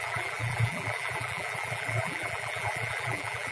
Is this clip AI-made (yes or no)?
yes